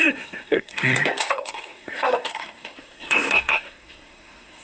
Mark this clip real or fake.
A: fake